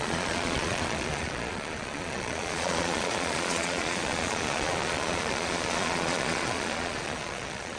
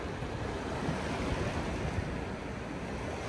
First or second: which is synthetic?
first